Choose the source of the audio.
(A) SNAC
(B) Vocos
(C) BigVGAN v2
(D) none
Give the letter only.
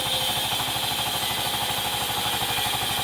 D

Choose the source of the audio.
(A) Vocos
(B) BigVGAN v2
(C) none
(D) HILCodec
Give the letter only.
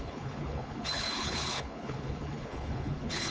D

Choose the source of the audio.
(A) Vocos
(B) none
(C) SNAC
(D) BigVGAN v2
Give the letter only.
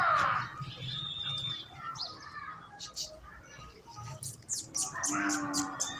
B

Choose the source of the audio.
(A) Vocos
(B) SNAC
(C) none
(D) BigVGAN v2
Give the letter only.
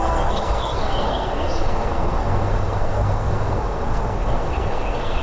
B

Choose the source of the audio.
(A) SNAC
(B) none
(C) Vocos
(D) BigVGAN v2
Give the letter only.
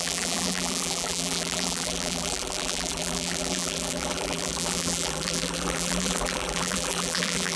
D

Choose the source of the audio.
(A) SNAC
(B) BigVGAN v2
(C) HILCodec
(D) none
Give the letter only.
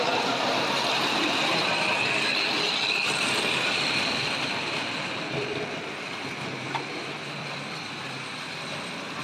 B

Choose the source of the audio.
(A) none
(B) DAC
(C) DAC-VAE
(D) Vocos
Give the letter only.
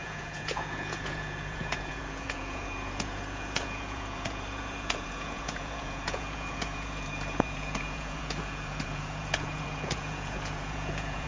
D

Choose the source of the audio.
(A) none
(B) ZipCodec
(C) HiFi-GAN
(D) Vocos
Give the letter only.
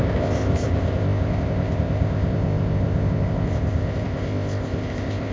B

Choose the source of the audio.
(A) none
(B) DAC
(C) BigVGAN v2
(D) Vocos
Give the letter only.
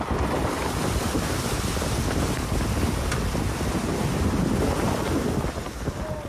A